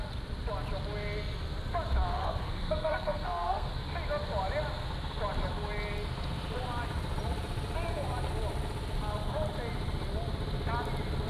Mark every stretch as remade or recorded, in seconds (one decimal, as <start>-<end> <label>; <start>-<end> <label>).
0.0-2.1 recorded; 2.1-3.7 remade; 3.7-11.3 recorded